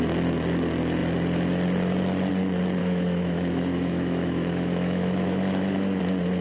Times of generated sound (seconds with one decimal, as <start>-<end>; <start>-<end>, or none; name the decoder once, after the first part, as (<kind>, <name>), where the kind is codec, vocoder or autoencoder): 2.8-6.0 (autoencoder, DAC-VAE)